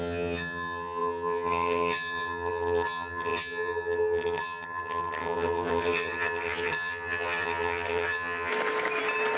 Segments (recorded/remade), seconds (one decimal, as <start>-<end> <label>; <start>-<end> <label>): 0.0-8.5 remade; 8.5-9.4 recorded